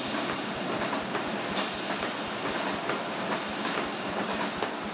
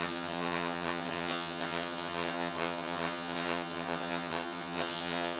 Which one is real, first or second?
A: first